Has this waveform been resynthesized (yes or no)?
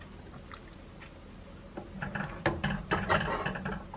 no